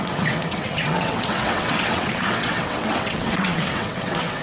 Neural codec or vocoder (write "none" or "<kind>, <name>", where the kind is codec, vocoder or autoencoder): vocoder, WaveNeXt